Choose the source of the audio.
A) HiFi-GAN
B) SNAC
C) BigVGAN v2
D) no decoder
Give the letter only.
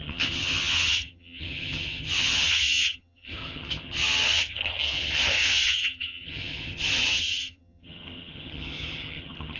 A